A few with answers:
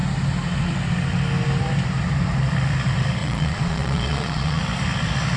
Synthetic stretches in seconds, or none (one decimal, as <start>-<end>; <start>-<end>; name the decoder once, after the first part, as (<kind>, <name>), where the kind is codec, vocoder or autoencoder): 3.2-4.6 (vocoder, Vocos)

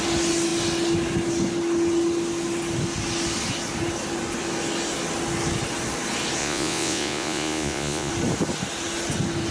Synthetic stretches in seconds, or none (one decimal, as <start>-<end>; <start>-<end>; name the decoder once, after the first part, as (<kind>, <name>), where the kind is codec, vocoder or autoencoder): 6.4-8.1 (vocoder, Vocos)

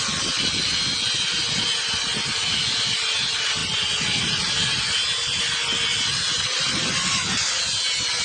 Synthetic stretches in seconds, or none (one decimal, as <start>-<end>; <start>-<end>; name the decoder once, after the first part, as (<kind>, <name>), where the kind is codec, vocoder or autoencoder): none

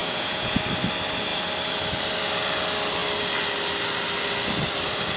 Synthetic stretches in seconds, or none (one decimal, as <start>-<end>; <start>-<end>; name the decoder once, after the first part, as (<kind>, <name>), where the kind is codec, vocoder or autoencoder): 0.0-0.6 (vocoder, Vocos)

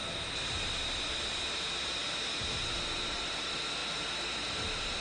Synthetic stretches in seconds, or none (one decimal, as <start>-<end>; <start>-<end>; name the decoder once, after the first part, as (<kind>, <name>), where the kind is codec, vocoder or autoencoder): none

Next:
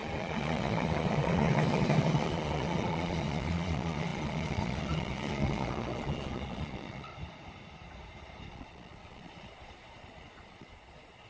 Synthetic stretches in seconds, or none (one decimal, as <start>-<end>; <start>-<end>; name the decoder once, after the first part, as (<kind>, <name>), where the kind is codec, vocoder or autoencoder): 0.0-7.1 (vocoder, Vocos); 8.5-11.3